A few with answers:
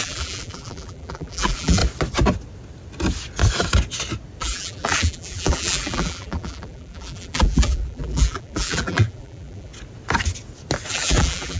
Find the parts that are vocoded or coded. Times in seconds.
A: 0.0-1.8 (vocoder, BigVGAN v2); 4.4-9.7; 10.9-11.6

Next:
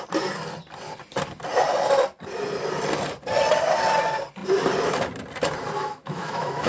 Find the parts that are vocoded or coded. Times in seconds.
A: 5.8-6.7 (autoencoder, DAC-VAE)